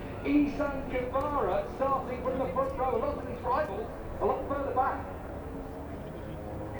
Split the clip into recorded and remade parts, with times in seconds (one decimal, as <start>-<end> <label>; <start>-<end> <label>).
0.0-4.4 recorded; 4.4-5.3 remade; 5.3-6.8 recorded